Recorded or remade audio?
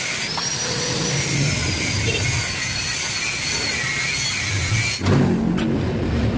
recorded